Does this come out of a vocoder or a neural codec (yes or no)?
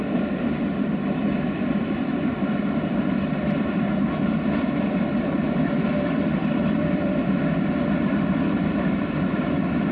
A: yes